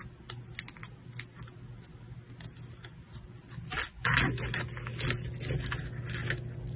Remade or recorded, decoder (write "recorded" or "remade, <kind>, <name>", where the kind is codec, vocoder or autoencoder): recorded